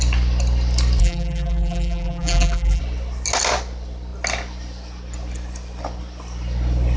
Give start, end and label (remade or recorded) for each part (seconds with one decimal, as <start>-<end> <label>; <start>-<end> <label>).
0.0-1.0 recorded; 1.0-2.8 remade; 2.8-7.0 recorded